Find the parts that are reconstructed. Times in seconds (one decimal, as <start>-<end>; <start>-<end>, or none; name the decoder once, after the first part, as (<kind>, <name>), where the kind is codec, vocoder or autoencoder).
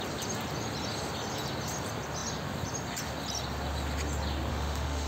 4.5-5.1 (autoencoder, DAC-VAE)